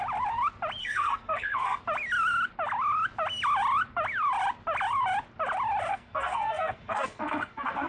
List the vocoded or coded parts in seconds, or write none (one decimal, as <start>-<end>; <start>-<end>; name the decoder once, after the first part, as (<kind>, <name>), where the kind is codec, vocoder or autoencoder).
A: 0.8-1.8 (codec, SNAC); 5.9-7.9